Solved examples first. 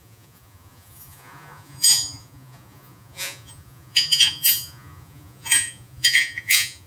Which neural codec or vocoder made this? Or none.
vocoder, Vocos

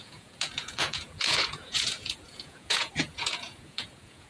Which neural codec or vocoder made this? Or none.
vocoder, Vocos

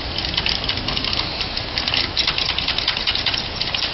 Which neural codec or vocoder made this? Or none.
none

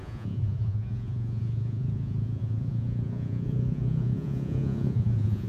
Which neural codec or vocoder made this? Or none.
vocoder, Vocos